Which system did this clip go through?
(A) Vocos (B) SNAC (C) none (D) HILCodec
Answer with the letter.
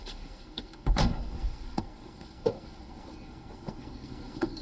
B